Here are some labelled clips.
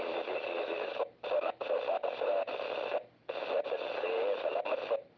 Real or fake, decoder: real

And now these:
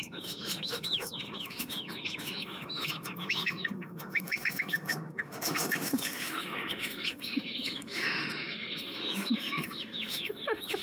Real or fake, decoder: fake, autoencoder, DAC-VAE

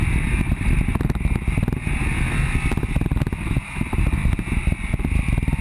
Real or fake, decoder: real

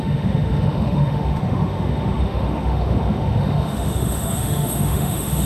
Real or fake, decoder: fake, autoencoder, DAC-VAE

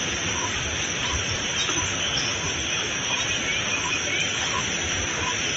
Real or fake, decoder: real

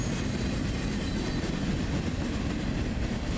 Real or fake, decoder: real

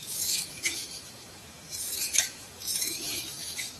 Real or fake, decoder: fake, autoencoder, DAC-VAE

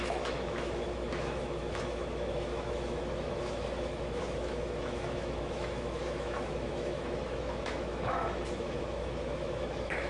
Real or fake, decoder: fake, autoencoder, DAC-VAE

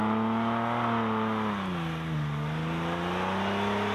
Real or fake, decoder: real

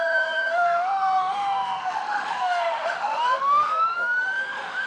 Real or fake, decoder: fake, autoencoder, DAC-VAE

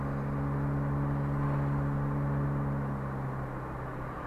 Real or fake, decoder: real